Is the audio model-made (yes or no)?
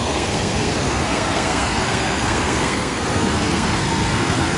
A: yes